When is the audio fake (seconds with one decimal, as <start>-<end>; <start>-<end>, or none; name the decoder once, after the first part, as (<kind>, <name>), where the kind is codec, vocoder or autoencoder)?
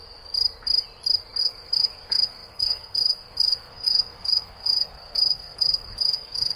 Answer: 1.4-6.6 (codec, SNAC)